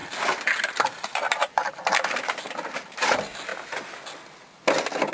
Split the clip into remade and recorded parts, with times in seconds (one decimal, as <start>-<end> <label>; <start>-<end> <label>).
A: 0.0-0.6 recorded; 0.6-3.5 remade; 3.5-5.1 recorded